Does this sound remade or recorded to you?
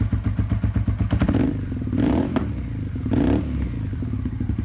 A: recorded